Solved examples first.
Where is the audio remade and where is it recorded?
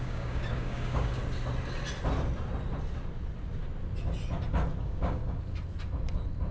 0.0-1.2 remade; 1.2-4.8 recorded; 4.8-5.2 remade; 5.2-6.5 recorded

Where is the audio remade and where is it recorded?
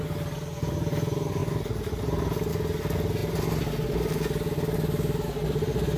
0.0-6.0 recorded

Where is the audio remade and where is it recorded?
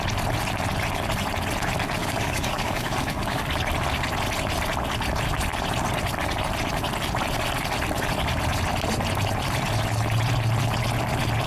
0.0-2.0 recorded; 2.0-3.4 remade; 3.4-11.5 recorded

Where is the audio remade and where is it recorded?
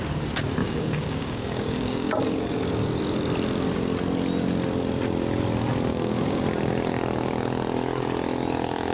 0.0-0.6 recorded; 0.6-2.4 remade; 2.4-5.9 recorded; 5.9-6.4 remade; 6.4-8.9 recorded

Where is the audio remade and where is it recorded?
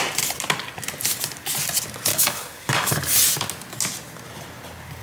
0.0-2.1 recorded; 2.1-2.9 remade; 2.9-5.0 recorded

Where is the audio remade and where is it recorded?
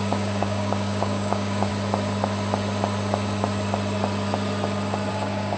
0.0-1.7 remade; 1.7-5.1 recorded; 5.1-5.6 remade